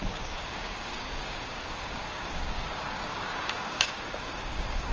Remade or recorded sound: remade